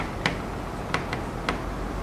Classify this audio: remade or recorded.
recorded